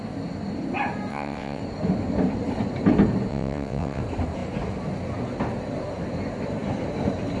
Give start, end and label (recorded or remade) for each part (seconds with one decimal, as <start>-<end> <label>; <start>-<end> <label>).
0.0-1.1 recorded; 1.1-1.6 remade; 1.6-3.3 recorded; 3.3-4.0 remade; 4.0-7.4 recorded